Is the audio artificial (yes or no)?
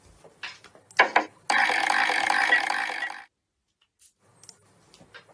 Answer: no